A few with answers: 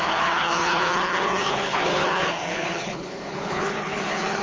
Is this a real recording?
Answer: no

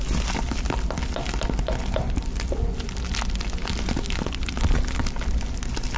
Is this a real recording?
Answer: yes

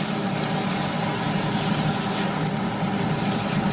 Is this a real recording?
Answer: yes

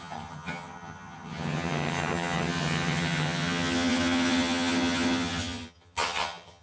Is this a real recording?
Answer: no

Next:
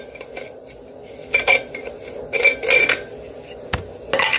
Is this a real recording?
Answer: yes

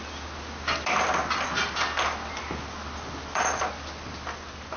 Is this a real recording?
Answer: yes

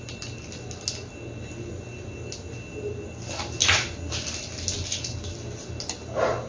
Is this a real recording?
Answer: yes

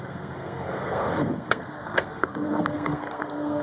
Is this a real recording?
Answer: no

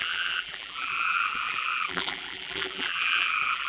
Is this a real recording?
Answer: no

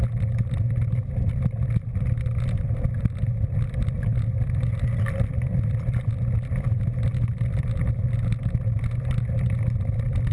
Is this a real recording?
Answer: yes